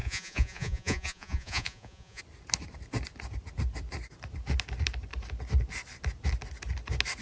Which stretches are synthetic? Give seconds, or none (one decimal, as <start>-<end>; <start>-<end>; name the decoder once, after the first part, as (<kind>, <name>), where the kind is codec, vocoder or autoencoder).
0.0-2.2 (vocoder, Vocos)